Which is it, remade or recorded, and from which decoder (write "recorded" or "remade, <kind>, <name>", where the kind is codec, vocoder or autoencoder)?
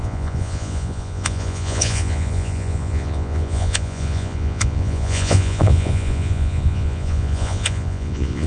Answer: remade, vocoder, Vocos